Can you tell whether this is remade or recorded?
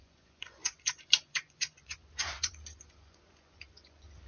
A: remade